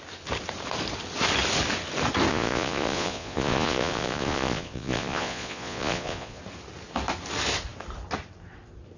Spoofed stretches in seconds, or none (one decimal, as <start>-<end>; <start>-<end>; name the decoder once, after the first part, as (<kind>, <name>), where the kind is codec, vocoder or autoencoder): 2.3-6.4 (vocoder, Vocos)